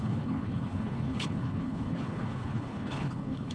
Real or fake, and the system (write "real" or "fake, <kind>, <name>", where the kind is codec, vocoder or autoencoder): fake, codec, HILCodec